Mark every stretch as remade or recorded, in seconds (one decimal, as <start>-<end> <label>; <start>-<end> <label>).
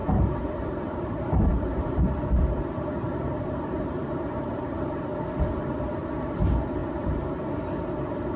0.0-5.0 remade; 5.0-8.4 recorded